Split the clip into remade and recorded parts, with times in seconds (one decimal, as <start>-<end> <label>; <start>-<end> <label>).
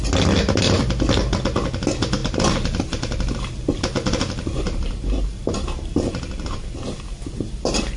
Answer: 0.0-8.0 recorded